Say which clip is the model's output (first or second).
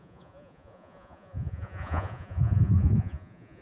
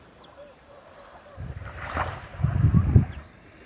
first